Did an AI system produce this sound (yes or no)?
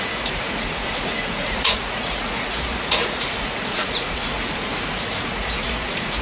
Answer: yes